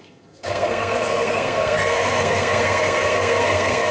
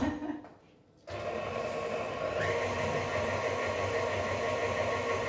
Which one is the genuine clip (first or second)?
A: second